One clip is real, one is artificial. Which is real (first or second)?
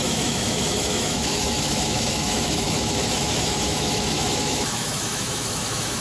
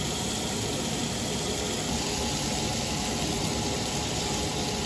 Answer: second